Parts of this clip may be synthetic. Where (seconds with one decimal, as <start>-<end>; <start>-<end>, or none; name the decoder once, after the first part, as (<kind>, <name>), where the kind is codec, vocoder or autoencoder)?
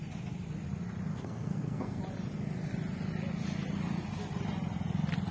1.1-2.0 (codec, SNAC)